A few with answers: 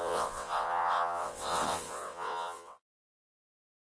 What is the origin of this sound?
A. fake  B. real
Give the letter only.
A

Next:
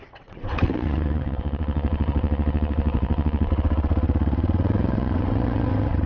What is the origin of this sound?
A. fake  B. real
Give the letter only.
A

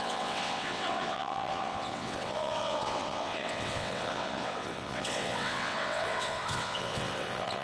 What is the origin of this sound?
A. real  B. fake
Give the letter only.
B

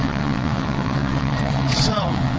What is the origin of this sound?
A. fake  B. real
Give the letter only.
A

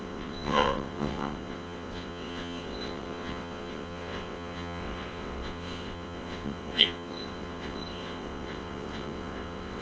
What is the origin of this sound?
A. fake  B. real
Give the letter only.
A